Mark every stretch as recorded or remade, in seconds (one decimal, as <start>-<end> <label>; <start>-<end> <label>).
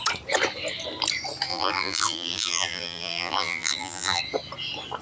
0.0-1.5 recorded; 1.5-4.2 remade; 4.2-5.0 recorded